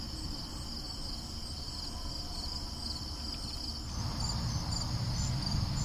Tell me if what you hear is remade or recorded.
recorded